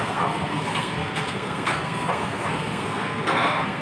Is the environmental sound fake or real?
fake